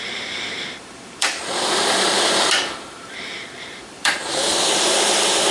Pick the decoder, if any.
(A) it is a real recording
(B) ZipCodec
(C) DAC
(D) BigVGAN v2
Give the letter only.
D